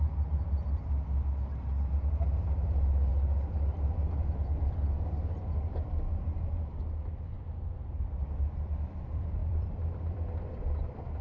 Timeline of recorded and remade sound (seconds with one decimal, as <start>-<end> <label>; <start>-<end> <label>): 0.0-3.1 remade; 3.1-7.0 recorded; 7.0-11.2 remade